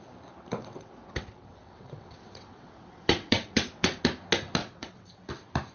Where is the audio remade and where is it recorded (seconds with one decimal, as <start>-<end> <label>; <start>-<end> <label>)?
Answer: 0.0-0.6 recorded; 0.6-4.0 remade; 4.0-4.6 recorded; 4.6-5.3 remade; 5.3-5.7 recorded